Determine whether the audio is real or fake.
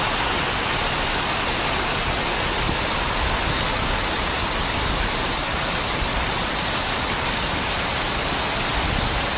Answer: real